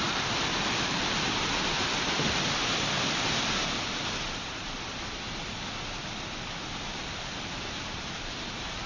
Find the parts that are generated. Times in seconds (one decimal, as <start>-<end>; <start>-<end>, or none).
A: 0.0-2.6; 6.9-8.9